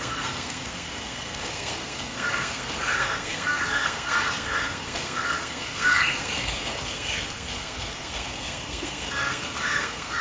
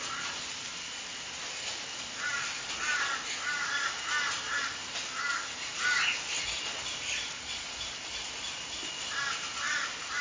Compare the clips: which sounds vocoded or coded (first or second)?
first